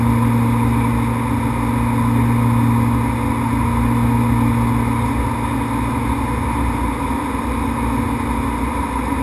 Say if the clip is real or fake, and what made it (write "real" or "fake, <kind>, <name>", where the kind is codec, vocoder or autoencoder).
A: real